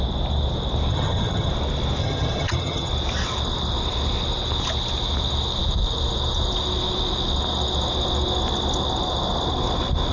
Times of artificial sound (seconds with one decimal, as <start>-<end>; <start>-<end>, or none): 0.9-1.5; 2.0-2.9